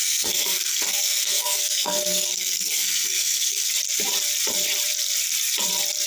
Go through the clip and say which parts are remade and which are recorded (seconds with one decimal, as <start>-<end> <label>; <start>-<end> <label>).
0.0-3.7 remade; 3.7-6.1 recorded